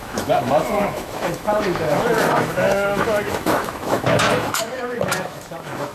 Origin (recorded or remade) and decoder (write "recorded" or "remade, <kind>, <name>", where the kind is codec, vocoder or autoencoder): remade, autoencoder, DAC-VAE